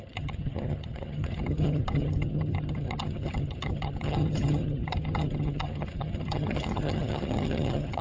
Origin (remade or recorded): remade